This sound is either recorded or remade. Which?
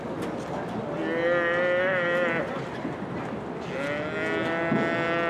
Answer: recorded